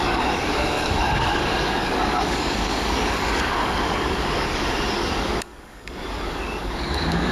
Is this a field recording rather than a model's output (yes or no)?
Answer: no